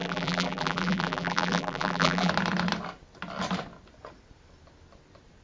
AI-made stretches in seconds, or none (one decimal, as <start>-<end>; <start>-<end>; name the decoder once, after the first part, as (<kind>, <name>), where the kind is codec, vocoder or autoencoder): 0.0-2.3 (vocoder, BigVGAN v2)

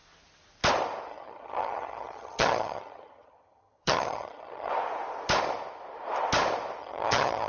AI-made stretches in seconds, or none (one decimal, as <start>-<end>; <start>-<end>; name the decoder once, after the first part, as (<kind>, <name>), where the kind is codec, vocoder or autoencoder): 1.1-4.7 (vocoder, HiFi-GAN); 6.8-7.5

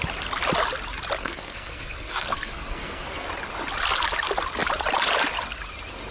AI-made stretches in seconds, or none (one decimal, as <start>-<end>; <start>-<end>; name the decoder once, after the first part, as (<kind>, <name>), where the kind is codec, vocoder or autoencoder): 1.2-3.3 (codec, SNAC)

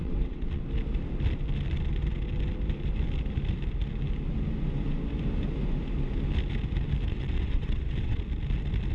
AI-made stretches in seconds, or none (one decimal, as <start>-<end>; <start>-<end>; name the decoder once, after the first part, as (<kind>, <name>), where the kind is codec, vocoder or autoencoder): 0.0-0.6 (vocoder, WaveNeXt); 7.1-8.2

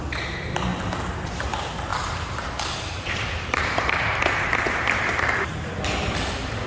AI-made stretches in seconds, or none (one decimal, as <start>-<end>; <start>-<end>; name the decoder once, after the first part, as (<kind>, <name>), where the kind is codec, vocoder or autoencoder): 1.9-5.9 (vocoder, BigVGAN v2)

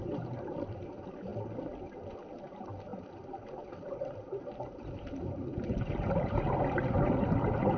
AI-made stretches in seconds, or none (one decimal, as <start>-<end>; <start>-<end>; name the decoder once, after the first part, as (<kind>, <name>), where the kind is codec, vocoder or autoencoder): 0.0-1.3 (vocoder, BigVGAN v2); 2.3-7.8

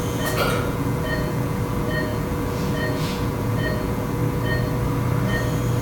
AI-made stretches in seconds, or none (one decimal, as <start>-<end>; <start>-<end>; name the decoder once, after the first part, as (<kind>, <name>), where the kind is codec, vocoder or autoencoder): 0.0-4.2 (vocoder, Vocos)

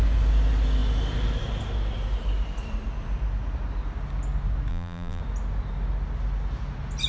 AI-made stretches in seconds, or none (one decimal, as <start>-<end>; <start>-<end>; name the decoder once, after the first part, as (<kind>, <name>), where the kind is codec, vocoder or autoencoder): 4.7-5.2 (vocoder, BigVGAN v2)